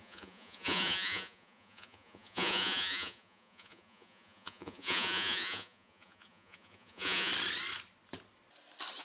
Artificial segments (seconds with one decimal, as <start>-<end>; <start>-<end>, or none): 0.0-7.3